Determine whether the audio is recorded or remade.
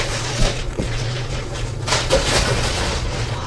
remade